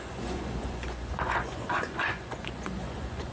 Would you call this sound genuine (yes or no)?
no